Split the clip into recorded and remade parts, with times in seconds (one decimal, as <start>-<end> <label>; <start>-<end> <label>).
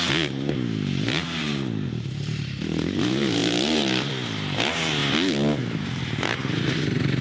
0.0-5.0 remade; 5.0-5.6 recorded; 5.6-7.2 remade